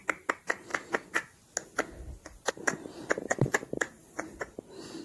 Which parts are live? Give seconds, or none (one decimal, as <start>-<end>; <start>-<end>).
0.7-2.5